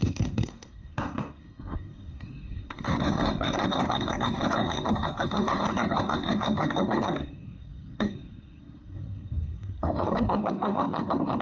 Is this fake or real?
fake